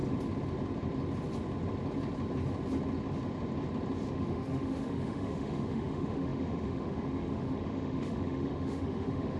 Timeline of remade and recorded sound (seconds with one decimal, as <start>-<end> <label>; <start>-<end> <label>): 0.0-4.1 recorded; 4.1-9.4 remade